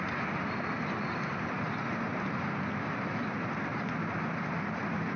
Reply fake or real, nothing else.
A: real